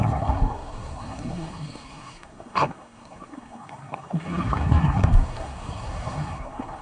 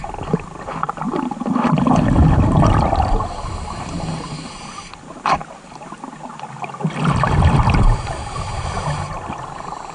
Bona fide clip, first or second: second